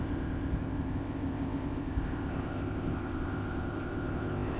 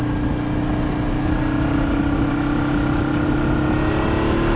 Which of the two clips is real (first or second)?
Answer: second